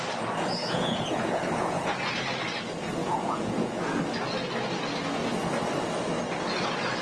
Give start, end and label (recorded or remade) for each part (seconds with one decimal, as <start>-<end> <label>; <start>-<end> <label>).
0.0-0.6 recorded; 0.6-2.1 remade; 2.1-3.0 recorded; 3.0-4.0 remade; 4.0-7.0 recorded